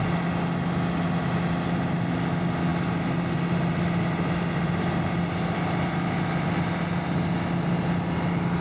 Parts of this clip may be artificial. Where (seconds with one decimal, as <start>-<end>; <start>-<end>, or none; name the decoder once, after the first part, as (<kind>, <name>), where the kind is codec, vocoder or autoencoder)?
none